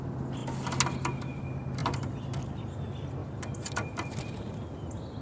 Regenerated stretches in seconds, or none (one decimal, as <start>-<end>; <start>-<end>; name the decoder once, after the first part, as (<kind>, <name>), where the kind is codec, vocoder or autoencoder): none